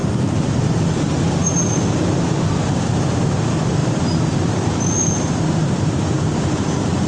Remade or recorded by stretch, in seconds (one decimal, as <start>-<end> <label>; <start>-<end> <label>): 0.0-3.8 recorded; 3.8-4.8 remade; 4.8-7.1 recorded